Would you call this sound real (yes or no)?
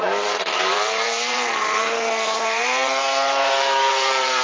no